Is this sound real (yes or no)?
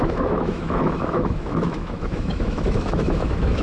no